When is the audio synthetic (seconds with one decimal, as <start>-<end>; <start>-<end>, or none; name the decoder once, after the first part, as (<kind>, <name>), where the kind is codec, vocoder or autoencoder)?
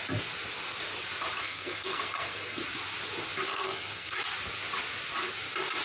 1.4-2.6 (codec, SNAC); 3.5-4.2